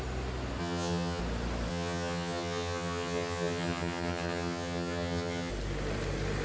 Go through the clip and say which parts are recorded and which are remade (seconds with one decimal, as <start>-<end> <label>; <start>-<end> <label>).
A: 0.0-0.6 recorded; 0.6-1.2 remade; 1.2-1.7 recorded; 1.7-5.5 remade; 5.5-6.4 recorded